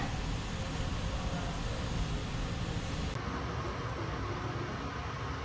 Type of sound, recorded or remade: recorded